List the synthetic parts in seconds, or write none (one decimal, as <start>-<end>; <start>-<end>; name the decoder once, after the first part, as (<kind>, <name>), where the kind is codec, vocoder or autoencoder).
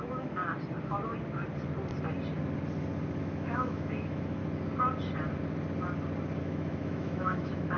0.0-0.4 (autoencoder, DAC-VAE); 3.2-4.4; 6.4-7.8